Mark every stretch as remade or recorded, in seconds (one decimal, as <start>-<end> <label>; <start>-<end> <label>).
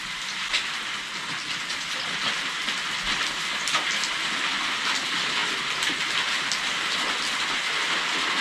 0.0-8.4 recorded